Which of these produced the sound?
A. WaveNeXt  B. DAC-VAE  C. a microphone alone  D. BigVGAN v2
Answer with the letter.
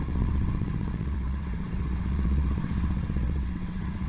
A